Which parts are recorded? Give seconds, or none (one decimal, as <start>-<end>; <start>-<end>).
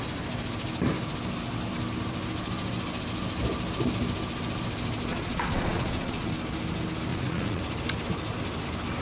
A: 0.0-5.1; 6.3-7.1; 7.6-9.0